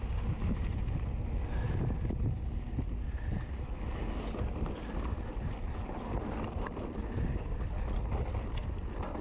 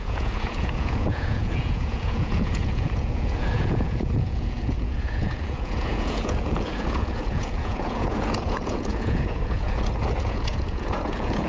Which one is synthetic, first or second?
second